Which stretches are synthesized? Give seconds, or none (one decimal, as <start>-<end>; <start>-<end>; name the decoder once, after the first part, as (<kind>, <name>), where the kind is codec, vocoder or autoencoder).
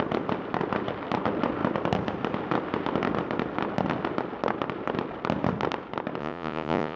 6.2-7.0 (vocoder, Vocos)